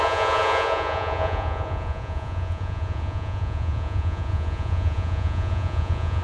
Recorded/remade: remade